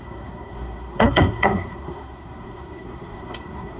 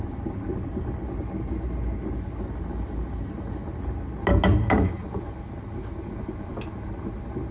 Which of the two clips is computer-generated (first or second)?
first